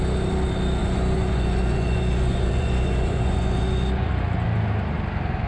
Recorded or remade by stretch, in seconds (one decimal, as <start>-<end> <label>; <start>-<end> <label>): 0.0-0.8 recorded; 0.8-4.1 remade; 4.1-5.5 recorded